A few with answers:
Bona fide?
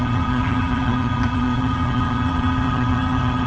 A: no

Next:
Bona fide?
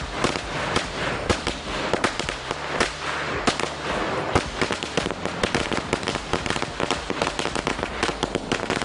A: no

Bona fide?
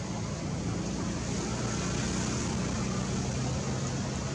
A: yes